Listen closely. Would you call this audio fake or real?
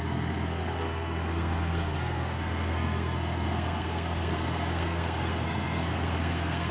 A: fake